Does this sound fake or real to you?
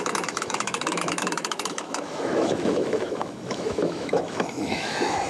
fake